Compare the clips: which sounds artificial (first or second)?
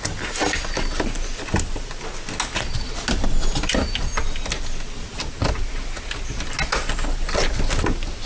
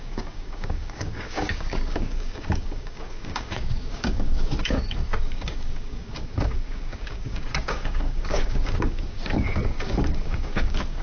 second